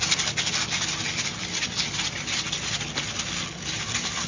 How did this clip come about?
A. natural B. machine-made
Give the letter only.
A